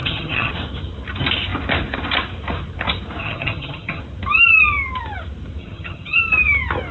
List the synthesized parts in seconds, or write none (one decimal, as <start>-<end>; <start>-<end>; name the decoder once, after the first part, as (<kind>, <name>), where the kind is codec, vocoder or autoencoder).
0.0-0.5 (vocoder, HiFi-GAN); 3.2-4.0; 5.6-6.2